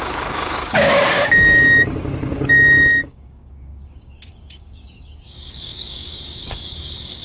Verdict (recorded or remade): remade